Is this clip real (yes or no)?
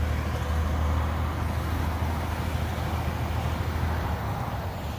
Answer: yes